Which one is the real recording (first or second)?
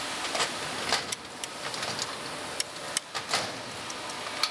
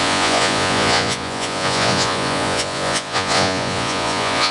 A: first